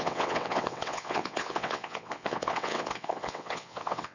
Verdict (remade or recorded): remade